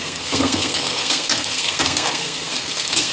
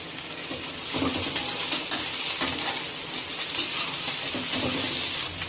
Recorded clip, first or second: second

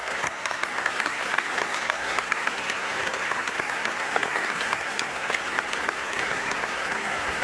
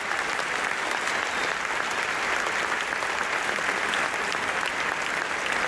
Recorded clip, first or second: second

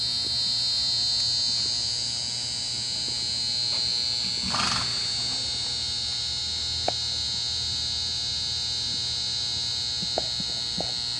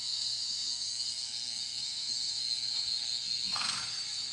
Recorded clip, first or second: first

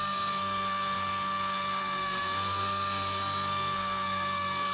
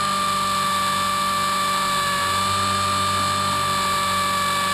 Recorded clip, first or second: second